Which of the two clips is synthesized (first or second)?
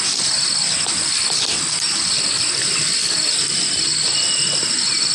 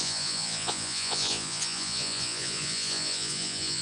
second